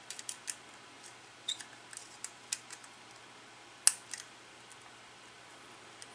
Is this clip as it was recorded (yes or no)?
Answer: yes